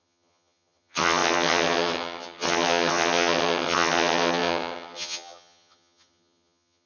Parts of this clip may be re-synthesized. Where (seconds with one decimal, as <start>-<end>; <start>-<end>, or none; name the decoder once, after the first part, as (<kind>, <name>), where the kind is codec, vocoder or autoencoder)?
0.0-6.9 (vocoder, HiFi-GAN)